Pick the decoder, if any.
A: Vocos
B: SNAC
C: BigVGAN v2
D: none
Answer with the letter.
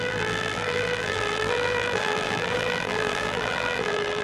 C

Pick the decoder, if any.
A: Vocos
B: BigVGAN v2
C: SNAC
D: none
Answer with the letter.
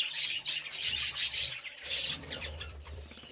B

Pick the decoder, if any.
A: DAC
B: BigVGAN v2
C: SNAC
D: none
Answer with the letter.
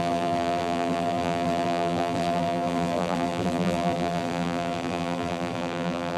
B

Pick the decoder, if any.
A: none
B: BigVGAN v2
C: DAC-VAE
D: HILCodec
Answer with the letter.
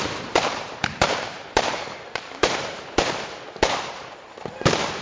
B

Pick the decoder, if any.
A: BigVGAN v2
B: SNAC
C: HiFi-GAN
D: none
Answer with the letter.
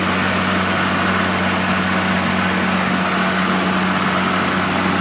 D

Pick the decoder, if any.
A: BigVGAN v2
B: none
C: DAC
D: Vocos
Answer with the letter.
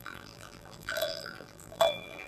A